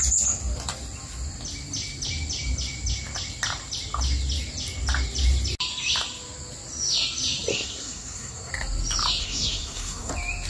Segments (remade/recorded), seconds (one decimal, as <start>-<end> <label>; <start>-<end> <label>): 0.0-7.5 recorded; 7.5-8.5 remade; 8.5-9.2 recorded; 9.2-10.1 remade; 10.1-10.5 recorded